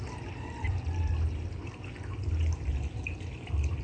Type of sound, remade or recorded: recorded